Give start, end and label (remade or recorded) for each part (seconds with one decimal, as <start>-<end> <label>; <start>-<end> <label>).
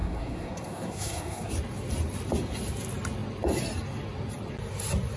0.0-1.5 remade; 1.5-5.2 recorded